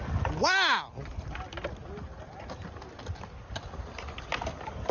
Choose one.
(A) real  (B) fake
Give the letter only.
A